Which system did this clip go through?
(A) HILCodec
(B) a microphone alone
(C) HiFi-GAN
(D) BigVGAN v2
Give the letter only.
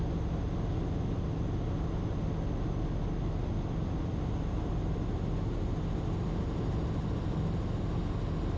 B